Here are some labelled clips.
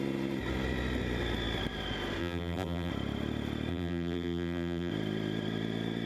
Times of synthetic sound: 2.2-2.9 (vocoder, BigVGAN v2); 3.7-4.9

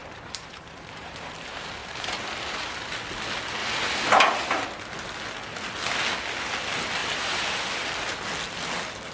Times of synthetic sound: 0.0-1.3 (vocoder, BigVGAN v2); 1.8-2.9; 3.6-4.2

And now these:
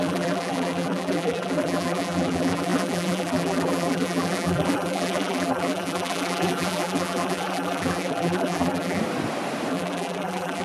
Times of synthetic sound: 0.0-9.0 (vocoder, BigVGAN v2); 9.7-10.6

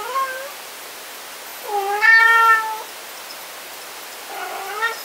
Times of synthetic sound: none

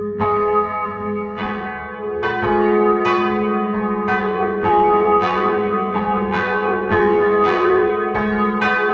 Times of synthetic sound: 0.0-1.7 (vocoder, BigVGAN v2); 4.2-7.9